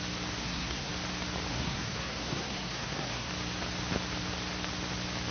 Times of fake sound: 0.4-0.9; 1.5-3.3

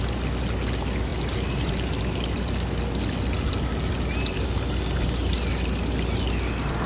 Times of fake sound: none